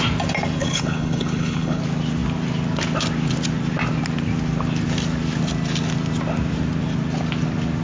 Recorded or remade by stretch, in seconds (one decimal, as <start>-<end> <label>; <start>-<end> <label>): 0.0-0.6 recorded; 0.6-1.8 remade; 1.8-7.8 recorded